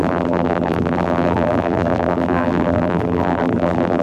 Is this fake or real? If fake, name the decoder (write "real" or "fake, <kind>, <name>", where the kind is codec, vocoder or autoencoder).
fake, vocoder, BigVGAN v2